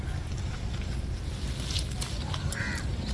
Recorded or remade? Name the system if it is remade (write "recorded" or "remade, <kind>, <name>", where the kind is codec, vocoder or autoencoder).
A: recorded